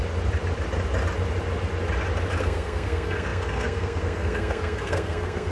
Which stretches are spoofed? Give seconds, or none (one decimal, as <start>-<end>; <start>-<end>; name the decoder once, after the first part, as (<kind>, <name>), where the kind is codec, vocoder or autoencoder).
2.4-5.5 (codec, SNAC)